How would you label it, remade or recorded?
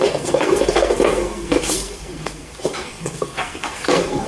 remade